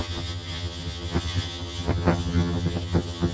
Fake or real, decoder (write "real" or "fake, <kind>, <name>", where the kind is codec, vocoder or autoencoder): fake, vocoder, HiFi-GAN